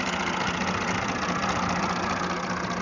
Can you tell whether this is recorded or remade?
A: recorded